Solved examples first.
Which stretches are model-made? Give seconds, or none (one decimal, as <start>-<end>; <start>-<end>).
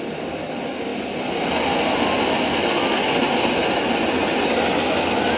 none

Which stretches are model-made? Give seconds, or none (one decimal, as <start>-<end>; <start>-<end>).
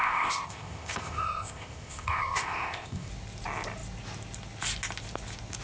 0.0-3.1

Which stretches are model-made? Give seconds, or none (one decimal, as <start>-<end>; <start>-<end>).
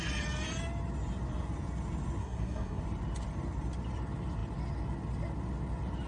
2.2-2.8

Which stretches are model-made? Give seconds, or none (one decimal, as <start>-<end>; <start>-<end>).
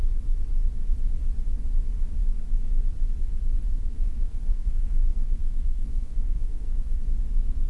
3.8-7.0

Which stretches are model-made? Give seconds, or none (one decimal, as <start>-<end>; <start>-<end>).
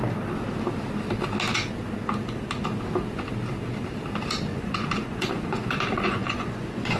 4.5-7.0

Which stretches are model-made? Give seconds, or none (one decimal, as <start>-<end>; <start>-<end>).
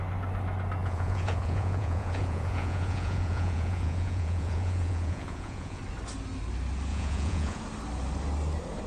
0.8-5.8; 6.9-7.6